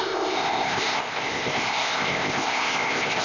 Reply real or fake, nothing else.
fake